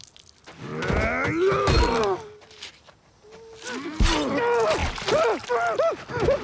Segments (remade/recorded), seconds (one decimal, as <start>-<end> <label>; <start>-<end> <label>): 0.0-6.4 recorded